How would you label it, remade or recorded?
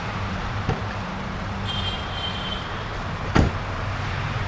remade